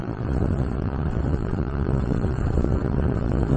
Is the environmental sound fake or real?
fake